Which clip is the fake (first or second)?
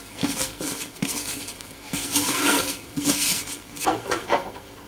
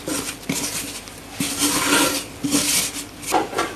first